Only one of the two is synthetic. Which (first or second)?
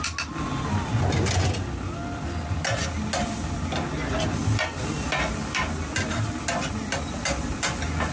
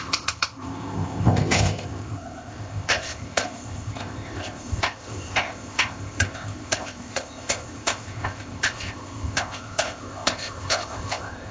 second